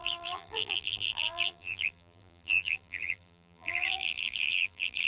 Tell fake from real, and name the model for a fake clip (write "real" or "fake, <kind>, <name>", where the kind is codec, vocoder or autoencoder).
fake, vocoder, BigVGAN v2